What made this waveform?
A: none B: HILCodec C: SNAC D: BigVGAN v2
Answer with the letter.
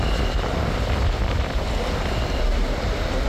A